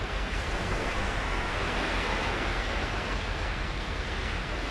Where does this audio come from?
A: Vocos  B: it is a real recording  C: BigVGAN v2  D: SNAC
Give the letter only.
D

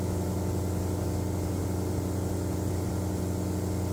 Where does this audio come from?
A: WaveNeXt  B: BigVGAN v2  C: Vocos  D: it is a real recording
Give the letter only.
D